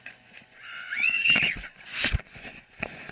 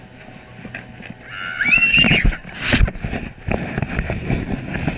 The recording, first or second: second